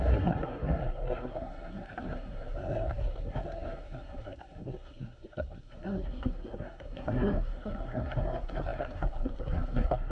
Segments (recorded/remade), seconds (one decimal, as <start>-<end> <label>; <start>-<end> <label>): 0.0-10.1 remade